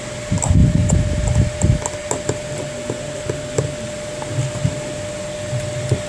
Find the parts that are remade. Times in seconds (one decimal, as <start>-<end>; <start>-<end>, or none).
0.6-1.1